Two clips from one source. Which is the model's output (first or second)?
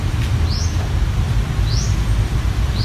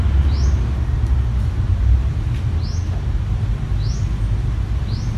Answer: first